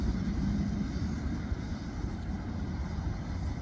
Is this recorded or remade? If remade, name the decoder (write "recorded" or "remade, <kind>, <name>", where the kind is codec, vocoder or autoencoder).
recorded